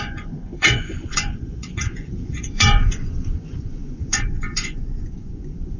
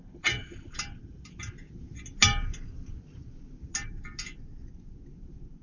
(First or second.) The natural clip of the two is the second